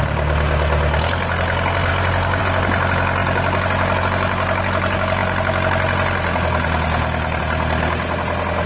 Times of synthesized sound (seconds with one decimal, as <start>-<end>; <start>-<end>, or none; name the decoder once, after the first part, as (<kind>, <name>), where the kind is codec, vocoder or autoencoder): none